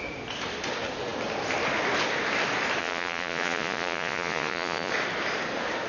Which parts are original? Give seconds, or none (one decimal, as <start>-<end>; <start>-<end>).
0.0-2.8; 4.9-5.9

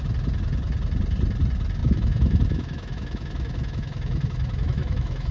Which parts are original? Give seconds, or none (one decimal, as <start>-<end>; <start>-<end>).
0.0-1.8

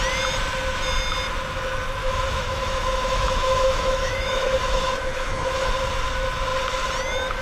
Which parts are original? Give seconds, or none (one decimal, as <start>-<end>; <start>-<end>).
0.0-2.0; 5.7-7.4